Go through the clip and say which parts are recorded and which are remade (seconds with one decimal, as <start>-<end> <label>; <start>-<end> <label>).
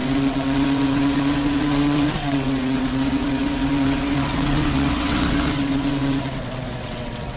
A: 0.0-7.4 remade